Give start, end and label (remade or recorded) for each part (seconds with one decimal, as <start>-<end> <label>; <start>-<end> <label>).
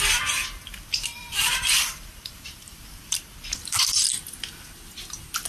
0.0-1.2 recorded; 1.2-4.0 remade; 4.0-5.5 recorded